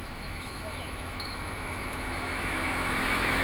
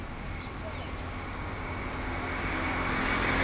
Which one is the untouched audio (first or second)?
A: second